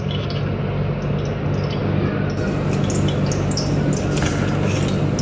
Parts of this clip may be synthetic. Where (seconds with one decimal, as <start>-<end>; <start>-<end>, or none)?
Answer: none